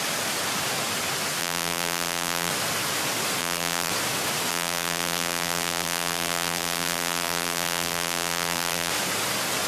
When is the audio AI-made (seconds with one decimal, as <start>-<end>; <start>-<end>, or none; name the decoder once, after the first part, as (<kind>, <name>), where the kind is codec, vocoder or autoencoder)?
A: 1.4-2.5 (vocoder, BigVGAN v2); 3.4-3.9; 4.5-8.9